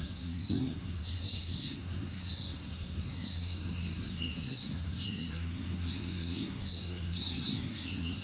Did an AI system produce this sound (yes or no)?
yes